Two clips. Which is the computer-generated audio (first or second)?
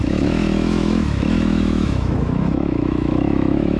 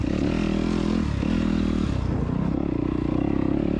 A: first